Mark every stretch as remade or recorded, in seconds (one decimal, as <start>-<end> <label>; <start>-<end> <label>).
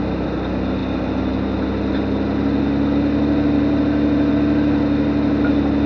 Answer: 0.0-5.9 recorded